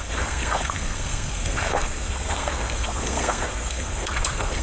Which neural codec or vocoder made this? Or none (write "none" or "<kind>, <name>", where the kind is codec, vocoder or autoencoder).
codec, SNAC